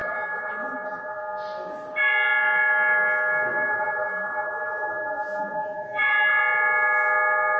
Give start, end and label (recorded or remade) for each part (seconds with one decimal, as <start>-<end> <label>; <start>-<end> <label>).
0.0-1.2 remade; 1.2-3.5 recorded; 3.5-6.4 remade; 6.4-7.6 recorded